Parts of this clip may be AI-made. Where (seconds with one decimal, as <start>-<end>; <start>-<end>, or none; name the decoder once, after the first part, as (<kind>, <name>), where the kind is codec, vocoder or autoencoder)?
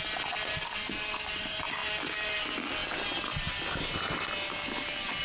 1.8-2.4 (vocoder, BigVGAN v2)